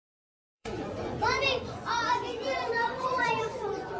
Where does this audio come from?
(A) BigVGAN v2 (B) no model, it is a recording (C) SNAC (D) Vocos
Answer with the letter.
D